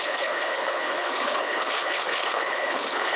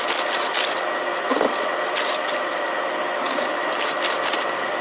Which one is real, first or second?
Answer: second